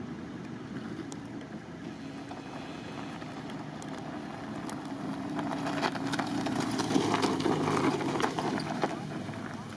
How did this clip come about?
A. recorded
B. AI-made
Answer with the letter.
A